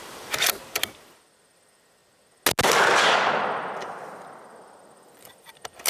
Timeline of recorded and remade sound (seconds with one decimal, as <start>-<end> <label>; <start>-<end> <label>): 0.0-2.0 remade; 2.0-3.3 recorded; 3.3-5.9 remade